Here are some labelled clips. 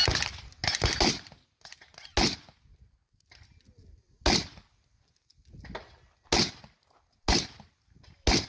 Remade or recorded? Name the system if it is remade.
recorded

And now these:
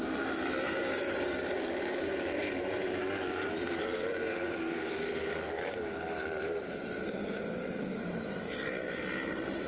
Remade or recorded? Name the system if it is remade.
remade, vocoder, BigVGAN v2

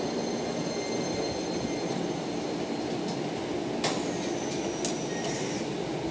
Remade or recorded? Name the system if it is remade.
recorded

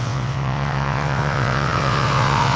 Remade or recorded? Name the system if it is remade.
remade, vocoder, WaveNeXt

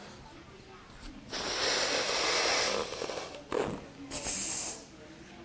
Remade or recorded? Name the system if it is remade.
recorded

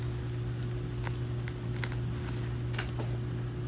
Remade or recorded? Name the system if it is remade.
recorded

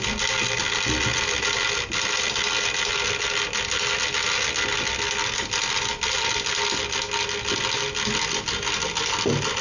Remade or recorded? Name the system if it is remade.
recorded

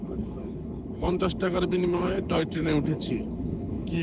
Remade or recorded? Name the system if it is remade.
remade, codec, HILCodec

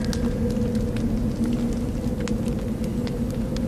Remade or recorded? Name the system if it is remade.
recorded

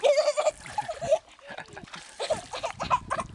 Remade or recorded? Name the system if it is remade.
recorded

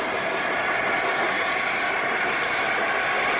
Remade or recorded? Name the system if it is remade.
recorded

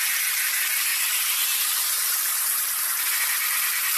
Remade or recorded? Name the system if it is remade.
remade, vocoder, BigVGAN v2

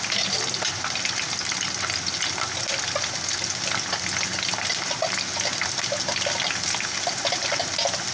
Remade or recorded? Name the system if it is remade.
recorded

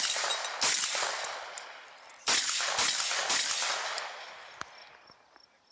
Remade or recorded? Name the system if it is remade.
recorded